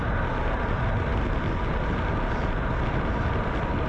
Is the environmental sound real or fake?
real